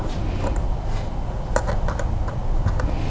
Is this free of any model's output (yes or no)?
yes